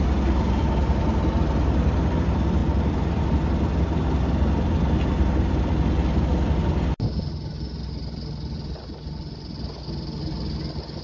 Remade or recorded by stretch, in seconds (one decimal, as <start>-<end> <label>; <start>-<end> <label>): 0.0-11.0 recorded